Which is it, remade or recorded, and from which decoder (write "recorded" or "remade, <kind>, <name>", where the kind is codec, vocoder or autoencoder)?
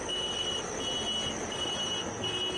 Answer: recorded